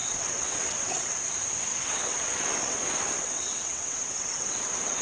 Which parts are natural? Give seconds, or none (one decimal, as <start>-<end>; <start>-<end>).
1.2-1.7